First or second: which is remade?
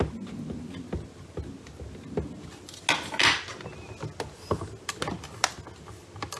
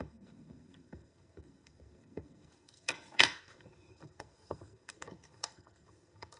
second